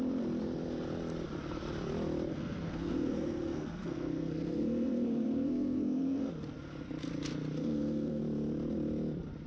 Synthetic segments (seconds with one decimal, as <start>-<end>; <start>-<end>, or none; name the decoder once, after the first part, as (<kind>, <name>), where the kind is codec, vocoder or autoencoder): 2.3-6.3 (codec, SNAC); 7.6-8.2